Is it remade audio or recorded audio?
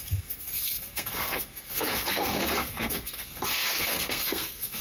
remade